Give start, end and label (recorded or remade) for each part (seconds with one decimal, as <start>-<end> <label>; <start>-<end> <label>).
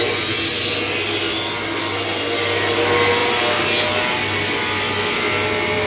0.0-5.9 recorded